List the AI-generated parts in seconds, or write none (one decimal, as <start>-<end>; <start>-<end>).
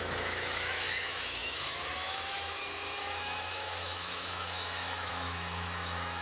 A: 0.0-6.2